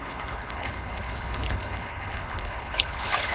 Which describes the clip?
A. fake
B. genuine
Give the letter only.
A